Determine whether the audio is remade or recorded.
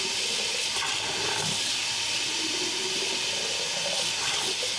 recorded